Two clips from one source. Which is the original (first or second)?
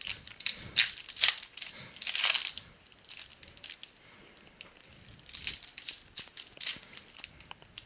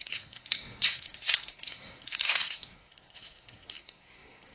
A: first